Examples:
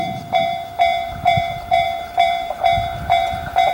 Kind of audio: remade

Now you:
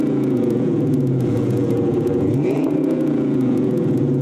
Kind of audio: remade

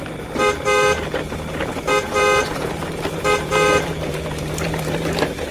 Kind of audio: remade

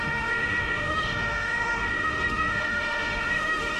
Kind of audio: remade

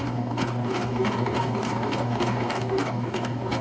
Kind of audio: remade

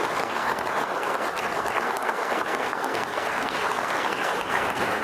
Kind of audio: remade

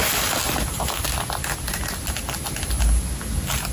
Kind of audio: recorded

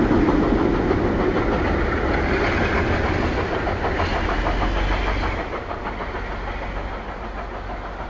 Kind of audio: recorded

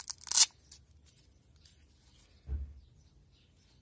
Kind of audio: recorded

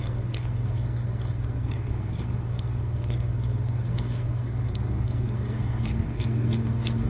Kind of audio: remade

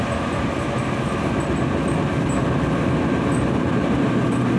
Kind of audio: recorded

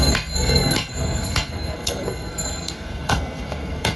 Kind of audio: remade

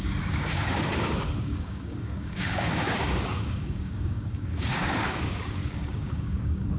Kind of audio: remade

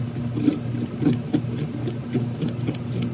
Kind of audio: recorded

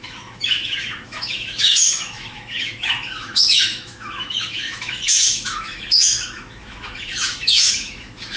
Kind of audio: remade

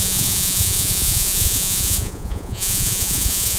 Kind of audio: remade